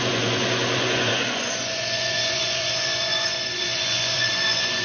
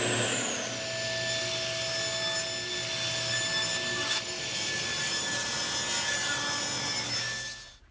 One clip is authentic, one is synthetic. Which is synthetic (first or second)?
first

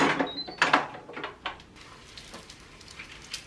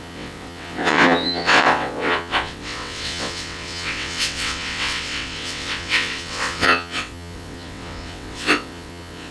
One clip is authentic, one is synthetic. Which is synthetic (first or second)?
second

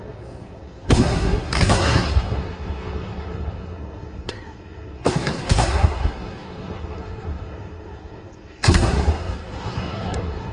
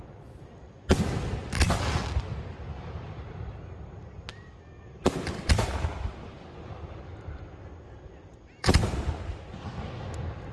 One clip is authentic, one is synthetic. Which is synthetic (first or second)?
first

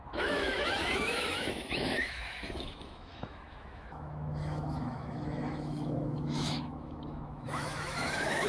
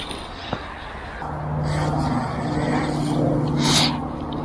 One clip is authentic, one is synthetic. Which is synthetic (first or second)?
first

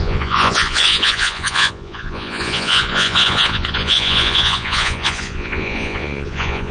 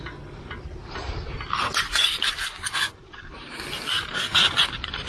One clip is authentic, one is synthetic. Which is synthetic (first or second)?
first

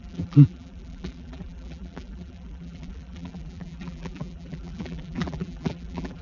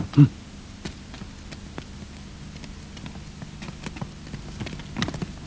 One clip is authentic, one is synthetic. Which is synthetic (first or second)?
first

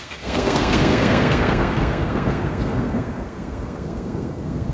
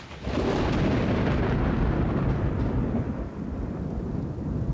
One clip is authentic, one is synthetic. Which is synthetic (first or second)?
first